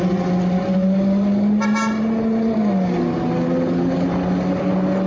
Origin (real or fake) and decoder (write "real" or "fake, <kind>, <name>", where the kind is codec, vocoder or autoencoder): real